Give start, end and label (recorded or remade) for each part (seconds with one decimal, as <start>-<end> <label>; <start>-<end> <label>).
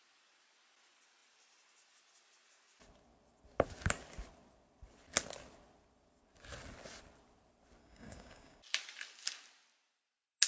0.0-7.8 recorded; 7.8-8.6 remade; 8.6-10.5 recorded